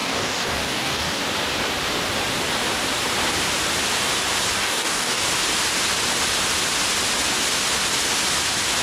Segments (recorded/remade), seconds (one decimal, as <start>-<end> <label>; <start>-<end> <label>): 0.0-1.2 remade; 1.2-4.6 recorded; 4.6-5.2 remade; 5.2-8.8 recorded